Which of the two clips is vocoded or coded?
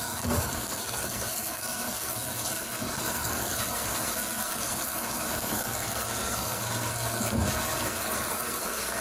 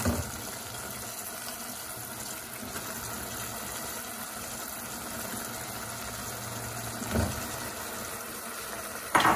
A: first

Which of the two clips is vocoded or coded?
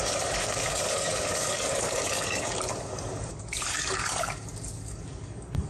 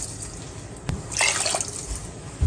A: first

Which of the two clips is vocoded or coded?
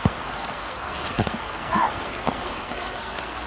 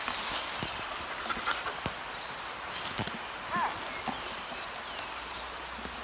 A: first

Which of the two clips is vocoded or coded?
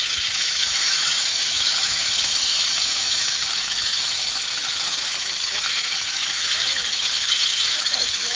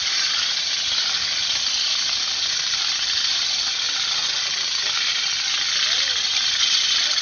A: first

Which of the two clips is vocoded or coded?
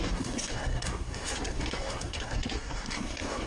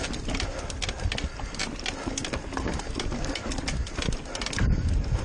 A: first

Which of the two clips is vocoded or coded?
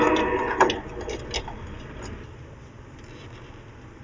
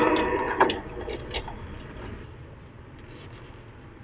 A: second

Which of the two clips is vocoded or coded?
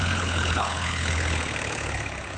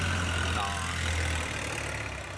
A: first